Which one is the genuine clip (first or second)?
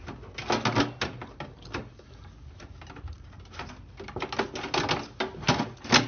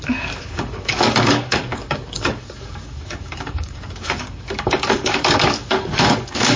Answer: first